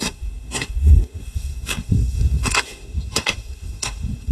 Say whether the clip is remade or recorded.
remade